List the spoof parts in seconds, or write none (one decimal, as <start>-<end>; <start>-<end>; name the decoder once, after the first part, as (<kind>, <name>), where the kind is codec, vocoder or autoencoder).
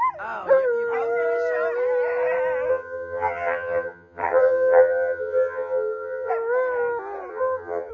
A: 2.7-6.3 (vocoder, HiFi-GAN); 7.3-7.9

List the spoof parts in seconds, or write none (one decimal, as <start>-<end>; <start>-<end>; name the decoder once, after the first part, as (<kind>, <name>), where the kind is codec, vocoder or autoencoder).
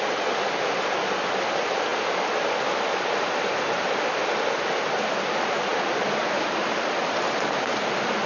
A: none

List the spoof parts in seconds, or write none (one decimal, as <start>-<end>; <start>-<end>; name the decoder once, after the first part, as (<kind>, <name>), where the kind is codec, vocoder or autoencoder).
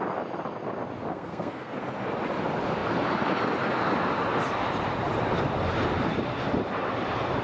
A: 1.1-1.8 (codec, SNAC)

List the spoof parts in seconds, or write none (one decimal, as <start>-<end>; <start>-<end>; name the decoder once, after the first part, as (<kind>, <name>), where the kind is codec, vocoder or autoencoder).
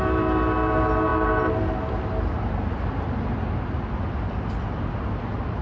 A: none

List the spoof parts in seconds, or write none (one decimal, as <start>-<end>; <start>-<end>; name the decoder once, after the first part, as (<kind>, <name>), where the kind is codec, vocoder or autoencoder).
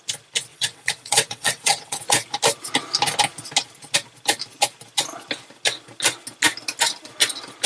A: 0.5-2.0 (vocoder, WaveNeXt)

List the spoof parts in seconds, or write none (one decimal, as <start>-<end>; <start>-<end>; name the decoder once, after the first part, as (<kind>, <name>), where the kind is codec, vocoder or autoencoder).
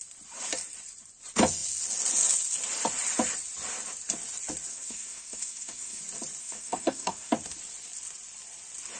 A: 4.7-6.0 (codec, SNAC); 6.4-7.3